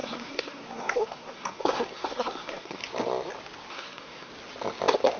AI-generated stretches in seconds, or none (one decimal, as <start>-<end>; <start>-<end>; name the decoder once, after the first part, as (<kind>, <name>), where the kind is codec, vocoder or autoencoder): 0.0-2.8 (codec, SNAC); 3.7-4.3